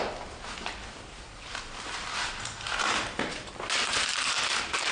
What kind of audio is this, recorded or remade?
recorded